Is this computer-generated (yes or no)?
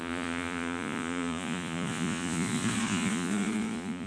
yes